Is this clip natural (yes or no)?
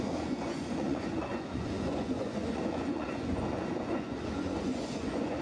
no